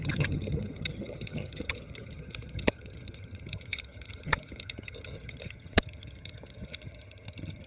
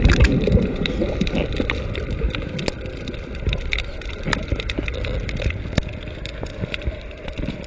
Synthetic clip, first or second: first